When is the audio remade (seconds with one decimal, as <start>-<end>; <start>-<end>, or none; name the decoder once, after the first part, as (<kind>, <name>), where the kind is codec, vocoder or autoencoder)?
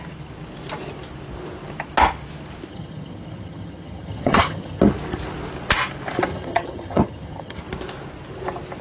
2.7-4.8 (vocoder, HiFi-GAN); 6.3-7.6